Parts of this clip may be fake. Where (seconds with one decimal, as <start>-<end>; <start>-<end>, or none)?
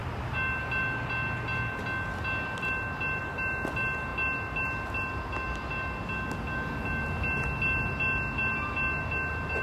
none